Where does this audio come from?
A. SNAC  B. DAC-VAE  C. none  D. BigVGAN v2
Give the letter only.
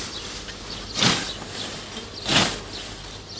C